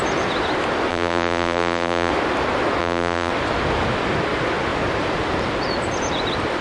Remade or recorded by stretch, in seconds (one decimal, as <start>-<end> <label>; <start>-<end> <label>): 0.0-0.9 recorded; 0.9-2.1 remade; 2.1-2.8 recorded; 2.8-3.3 remade; 3.3-6.6 recorded